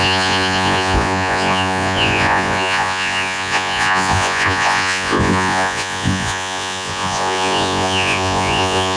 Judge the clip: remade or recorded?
remade